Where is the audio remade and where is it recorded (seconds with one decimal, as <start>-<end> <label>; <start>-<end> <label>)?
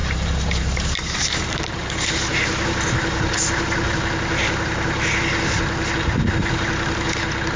0.0-4.0 remade; 4.0-4.4 recorded; 4.4-5.0 remade; 5.0-7.6 recorded